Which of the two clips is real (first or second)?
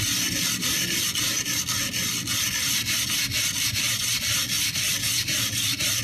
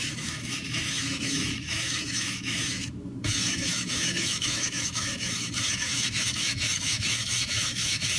first